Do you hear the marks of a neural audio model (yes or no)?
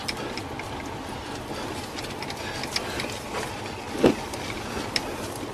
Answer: no